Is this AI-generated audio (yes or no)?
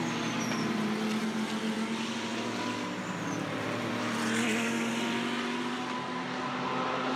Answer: no